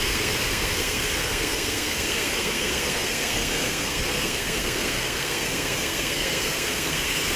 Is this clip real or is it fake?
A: fake